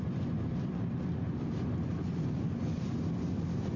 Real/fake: real